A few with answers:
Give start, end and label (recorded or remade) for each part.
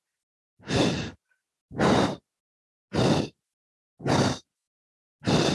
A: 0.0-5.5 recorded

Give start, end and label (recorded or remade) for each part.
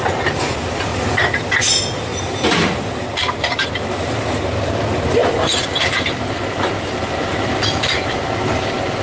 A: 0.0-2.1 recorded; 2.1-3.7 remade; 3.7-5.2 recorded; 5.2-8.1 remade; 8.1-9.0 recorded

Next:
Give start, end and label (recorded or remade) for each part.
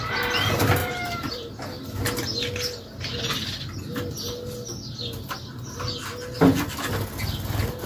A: 0.0-0.8 recorded; 0.8-1.5 remade; 1.5-7.9 recorded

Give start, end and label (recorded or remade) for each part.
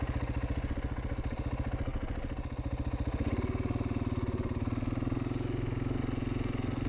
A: 0.0-6.9 recorded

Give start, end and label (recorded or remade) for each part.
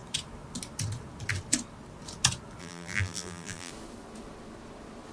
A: 0.0-2.6 recorded; 2.6-3.7 remade; 3.7-5.1 recorded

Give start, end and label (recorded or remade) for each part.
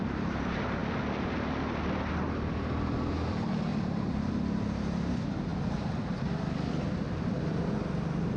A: 0.0-0.8 recorded; 0.8-1.3 remade; 1.3-3.7 recorded; 3.7-4.3 remade; 4.3-5.5 recorded; 5.5-6.7 remade; 6.7-8.4 recorded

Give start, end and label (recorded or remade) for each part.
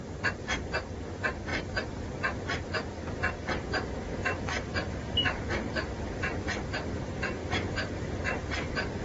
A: 0.0-1.5 recorded; 1.5-2.1 remade; 2.1-4.2 recorded; 4.2-6.1 remade; 6.1-9.0 recorded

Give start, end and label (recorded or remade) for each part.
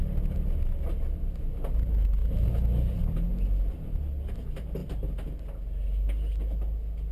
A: 0.0-7.1 recorded